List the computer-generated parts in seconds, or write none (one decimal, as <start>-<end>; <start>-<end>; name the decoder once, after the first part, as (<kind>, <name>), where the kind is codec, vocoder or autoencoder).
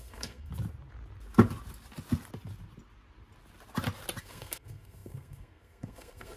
0.0-0.5 (codec, SNAC); 4.2-6.4